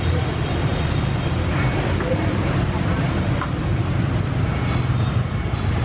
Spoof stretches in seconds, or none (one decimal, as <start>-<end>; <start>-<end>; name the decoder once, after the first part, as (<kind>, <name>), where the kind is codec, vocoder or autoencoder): 0.0-0.7 (vocoder, BigVGAN v2); 2.1-5.8